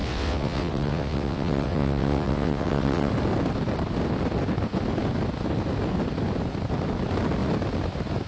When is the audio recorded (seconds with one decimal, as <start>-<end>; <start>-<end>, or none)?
3.1-8.3